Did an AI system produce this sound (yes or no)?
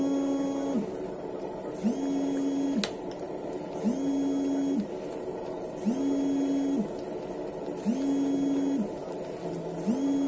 no